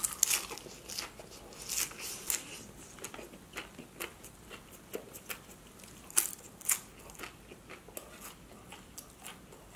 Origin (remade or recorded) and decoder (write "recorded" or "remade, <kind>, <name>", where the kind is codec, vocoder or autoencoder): recorded